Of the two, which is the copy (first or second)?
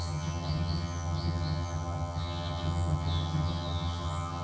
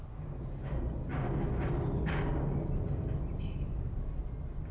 first